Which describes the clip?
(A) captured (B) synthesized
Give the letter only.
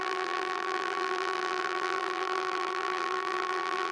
B